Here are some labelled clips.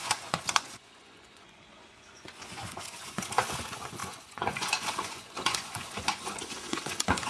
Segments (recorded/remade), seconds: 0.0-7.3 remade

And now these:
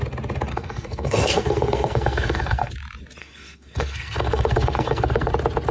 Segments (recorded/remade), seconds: 0.0-0.5 recorded; 0.5-2.7 remade; 2.7-3.2 recorded; 3.2-5.3 remade; 5.3-5.7 recorded

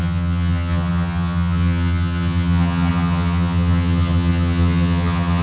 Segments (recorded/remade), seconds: 0.0-5.4 remade

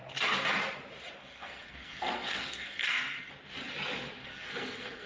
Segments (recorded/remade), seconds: 0.0-1.2 recorded; 1.2-3.3 remade; 3.3-4.2 recorded; 4.2-5.1 remade

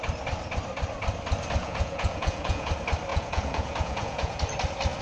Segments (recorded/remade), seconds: 0.0-1.6 recorded; 1.6-2.7 remade; 2.7-3.1 recorded; 3.1-4.4 remade; 4.4-5.0 recorded

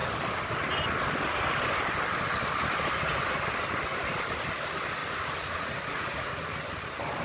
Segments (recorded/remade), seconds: 0.0-5.0 recorded; 5.0-6.5 remade; 6.5-7.2 recorded